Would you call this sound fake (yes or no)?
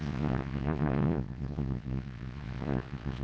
yes